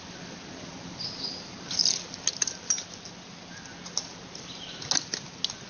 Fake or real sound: real